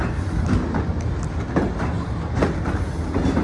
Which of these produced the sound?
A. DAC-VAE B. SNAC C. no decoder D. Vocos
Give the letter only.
C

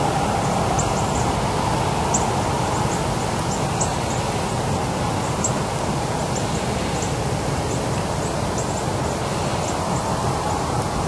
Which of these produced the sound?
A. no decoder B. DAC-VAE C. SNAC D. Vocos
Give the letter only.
A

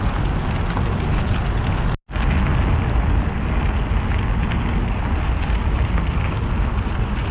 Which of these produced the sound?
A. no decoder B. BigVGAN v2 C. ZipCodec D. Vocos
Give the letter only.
A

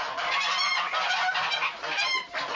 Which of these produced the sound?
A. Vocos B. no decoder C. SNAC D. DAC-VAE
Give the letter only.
B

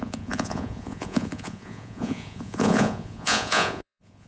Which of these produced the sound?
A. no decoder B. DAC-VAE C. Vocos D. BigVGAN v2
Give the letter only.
C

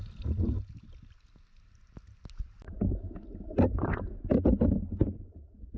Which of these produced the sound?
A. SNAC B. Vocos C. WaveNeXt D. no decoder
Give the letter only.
D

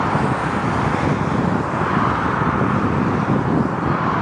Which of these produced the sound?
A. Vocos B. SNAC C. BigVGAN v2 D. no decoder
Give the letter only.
D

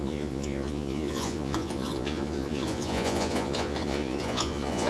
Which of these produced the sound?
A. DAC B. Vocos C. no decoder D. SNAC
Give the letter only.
B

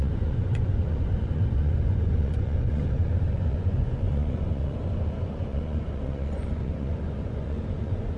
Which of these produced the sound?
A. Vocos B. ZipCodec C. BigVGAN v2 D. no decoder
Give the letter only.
A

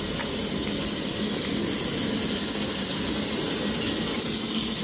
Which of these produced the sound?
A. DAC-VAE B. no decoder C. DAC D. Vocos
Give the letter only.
B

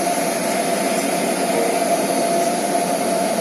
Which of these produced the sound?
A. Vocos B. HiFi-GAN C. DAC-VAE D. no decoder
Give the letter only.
D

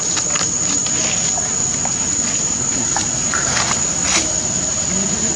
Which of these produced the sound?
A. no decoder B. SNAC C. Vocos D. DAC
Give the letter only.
A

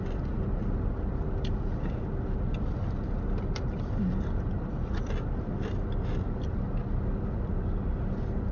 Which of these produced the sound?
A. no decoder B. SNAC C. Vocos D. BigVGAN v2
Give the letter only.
A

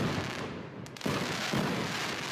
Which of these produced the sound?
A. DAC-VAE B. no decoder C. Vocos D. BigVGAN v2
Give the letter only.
B